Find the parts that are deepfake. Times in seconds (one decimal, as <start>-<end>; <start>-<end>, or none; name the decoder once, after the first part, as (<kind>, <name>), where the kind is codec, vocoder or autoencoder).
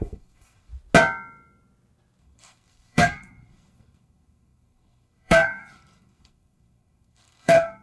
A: 0.0-0.7 (codec, SNAC); 2.2-7.8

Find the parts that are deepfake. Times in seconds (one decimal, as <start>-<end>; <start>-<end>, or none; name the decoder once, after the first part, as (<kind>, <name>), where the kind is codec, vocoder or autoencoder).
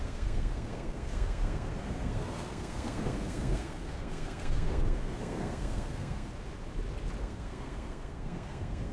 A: 0.0-6.3 (codec, SNAC); 7.2-8.9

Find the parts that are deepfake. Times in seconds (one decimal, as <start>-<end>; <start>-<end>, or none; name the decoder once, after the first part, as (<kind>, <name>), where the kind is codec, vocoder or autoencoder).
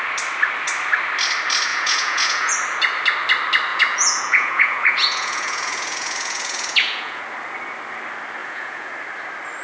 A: 1.7-2.5 (vocoder, Vocos); 3.7-7.2; 8.4-8.9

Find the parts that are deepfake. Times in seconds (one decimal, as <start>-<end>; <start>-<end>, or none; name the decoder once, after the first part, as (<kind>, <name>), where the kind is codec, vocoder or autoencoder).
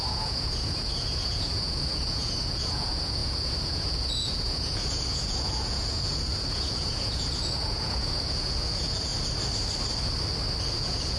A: 0.0-9.1 (vocoder, Vocos); 10.7-11.2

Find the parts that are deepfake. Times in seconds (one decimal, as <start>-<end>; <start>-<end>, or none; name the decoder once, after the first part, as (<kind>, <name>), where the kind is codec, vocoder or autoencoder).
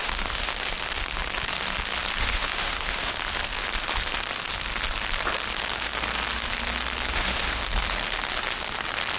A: 0.0-0.5 (autoencoder, DAC-VAE); 2.2-3.1; 7.1-7.6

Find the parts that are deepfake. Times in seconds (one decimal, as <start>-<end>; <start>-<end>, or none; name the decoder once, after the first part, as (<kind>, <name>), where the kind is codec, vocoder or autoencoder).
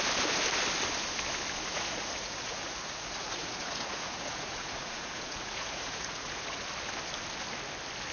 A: 1.7-6.6 (vocoder, Vocos)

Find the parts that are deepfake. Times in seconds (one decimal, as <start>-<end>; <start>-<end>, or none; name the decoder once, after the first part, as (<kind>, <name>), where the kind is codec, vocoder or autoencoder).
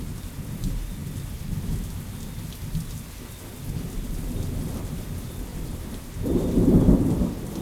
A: 5.5-6.5 (vocoder, BigVGAN v2)